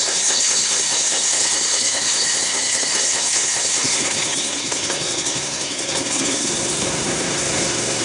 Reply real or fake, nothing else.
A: fake